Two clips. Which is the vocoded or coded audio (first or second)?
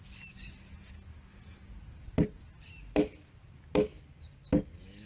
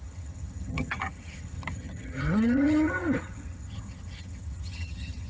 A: second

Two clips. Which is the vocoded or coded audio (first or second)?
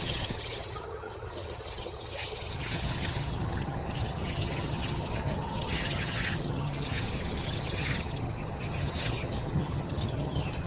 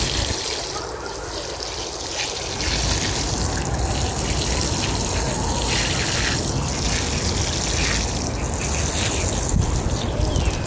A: first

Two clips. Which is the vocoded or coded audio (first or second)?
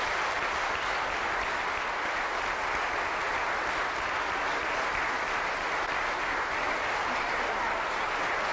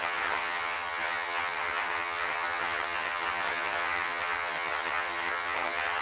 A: second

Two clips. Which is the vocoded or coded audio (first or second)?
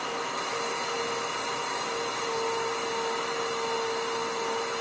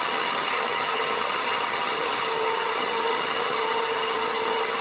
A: second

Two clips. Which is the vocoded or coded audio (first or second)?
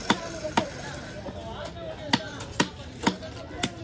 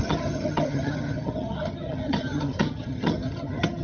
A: second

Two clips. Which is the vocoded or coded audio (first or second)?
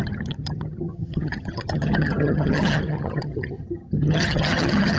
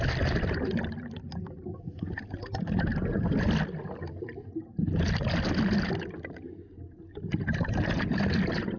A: first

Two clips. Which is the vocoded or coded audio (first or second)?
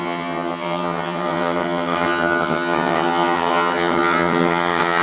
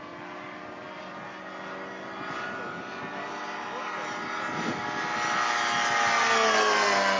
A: first